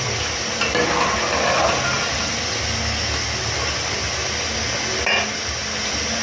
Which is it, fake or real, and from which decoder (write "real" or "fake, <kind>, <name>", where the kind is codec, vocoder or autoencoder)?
real